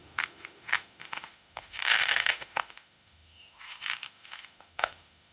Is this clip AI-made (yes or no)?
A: yes